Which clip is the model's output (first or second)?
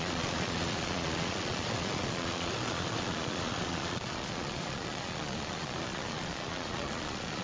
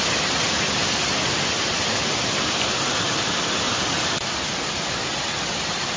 first